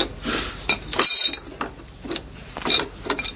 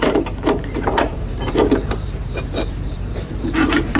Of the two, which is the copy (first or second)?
second